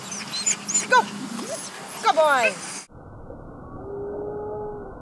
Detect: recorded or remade recorded